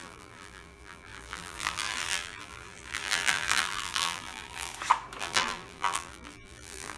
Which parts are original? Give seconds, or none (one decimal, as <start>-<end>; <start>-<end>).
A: 4.7-5.2